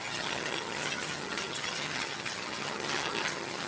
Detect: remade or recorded remade